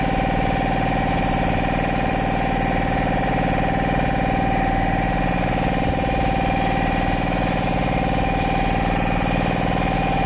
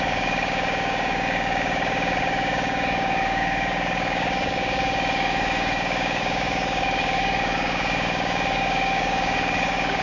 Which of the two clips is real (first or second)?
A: first